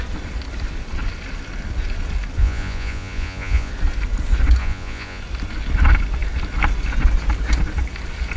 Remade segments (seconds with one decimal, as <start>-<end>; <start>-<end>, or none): 2.4-3.7; 4.6-5.2